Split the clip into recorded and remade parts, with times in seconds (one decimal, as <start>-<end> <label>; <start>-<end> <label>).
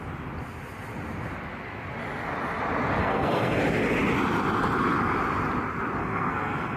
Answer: 0.0-3.0 recorded; 3.0-3.6 remade; 3.6-6.0 recorded; 6.0-6.8 remade